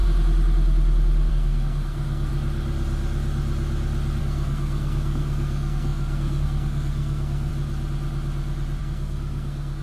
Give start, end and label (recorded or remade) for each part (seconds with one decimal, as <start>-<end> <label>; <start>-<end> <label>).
0.0-1.3 recorded; 1.3-2.3 remade; 2.3-4.2 recorded; 4.2-7.5 remade; 7.5-8.8 recorded; 8.8-9.8 remade